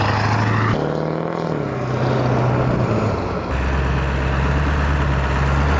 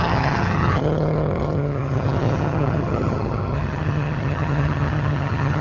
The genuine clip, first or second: first